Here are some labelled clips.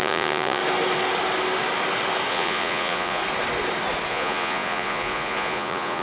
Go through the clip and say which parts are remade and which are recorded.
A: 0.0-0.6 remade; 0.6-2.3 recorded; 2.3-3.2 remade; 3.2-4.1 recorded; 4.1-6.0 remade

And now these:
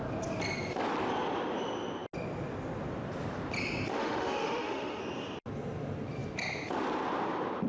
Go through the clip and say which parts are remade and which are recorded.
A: 0.0-3.9 recorded; 3.9-5.0 remade; 5.0-7.7 recorded

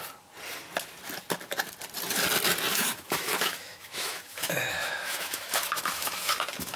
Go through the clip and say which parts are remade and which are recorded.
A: 0.0-2.7 recorded; 2.7-6.8 remade

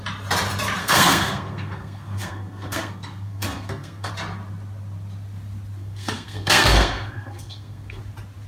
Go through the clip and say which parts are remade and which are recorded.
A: 0.0-0.8 recorded; 0.8-4.1 remade; 4.1-5.8 recorded; 5.8-8.0 remade; 8.0-8.5 recorded

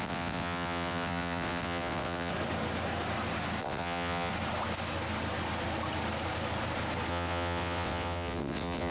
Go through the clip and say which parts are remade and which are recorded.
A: 0.0-2.3 remade; 2.3-3.6 recorded; 3.6-4.3 remade; 4.3-7.1 recorded; 7.1-8.9 remade

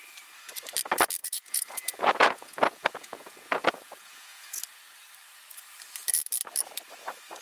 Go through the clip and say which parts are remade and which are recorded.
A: 0.0-1.2 recorded; 1.2-4.6 remade; 4.6-7.4 recorded

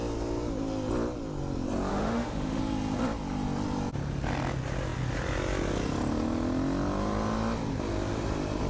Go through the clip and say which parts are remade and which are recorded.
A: 0.0-1.9 recorded; 1.9-2.6 remade; 2.6-8.7 recorded